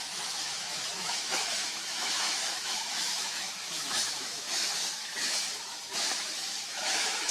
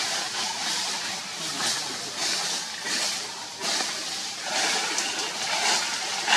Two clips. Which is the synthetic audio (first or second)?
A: first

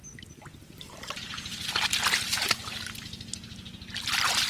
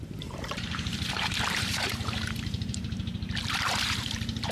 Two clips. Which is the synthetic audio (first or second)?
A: second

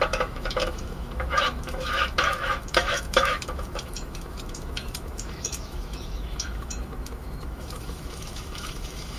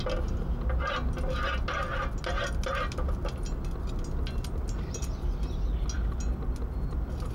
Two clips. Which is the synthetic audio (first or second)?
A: first